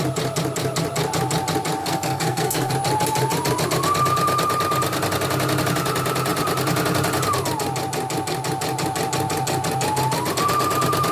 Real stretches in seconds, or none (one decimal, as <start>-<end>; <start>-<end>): 0.0-1.8; 2.7-11.1